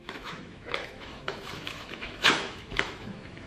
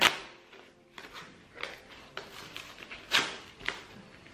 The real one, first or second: second